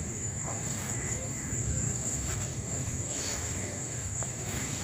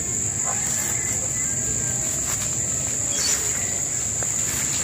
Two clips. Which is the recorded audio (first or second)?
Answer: second